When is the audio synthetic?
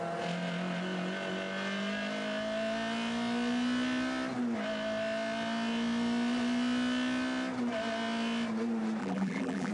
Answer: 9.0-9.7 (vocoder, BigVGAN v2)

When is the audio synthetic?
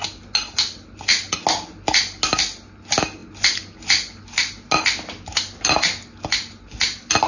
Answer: none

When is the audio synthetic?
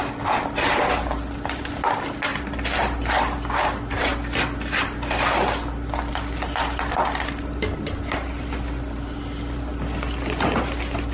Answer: 0.0-4.1 (vocoder, BigVGAN v2); 6.1-9.7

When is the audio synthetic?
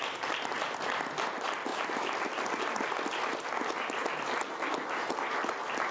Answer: none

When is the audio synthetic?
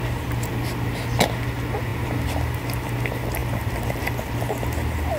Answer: none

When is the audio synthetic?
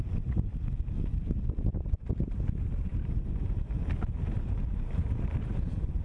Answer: none